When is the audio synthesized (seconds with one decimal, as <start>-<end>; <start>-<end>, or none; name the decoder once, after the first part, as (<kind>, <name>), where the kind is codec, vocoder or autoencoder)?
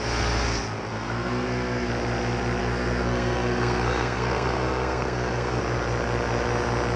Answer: 0.9-1.9 (codec, SNAC); 2.6-5.6